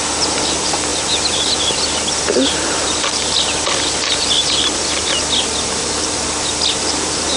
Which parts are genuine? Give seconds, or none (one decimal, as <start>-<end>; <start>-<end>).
0.0-7.4